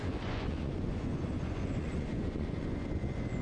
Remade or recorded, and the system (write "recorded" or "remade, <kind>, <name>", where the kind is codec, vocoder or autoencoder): remade, vocoder, Vocos